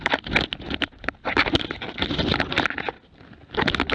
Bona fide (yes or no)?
yes